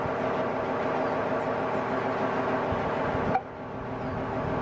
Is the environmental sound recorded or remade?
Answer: recorded